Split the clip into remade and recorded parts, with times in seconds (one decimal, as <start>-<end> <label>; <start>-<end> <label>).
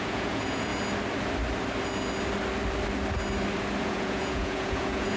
0.0-0.7 remade; 0.7-3.8 recorded; 3.8-5.2 remade